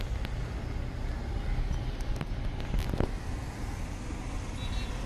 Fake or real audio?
real